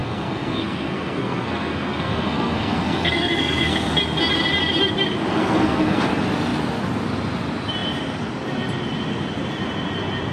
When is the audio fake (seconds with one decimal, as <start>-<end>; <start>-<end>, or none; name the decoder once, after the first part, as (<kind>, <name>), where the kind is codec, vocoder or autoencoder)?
0.0-4.0 (codec, SNAC); 5.3-6.1